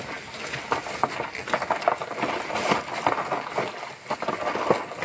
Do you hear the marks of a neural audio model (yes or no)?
no